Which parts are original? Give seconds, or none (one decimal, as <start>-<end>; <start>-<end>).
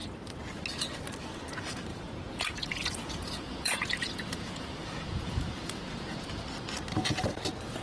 0.0-1.9; 6.2-7.8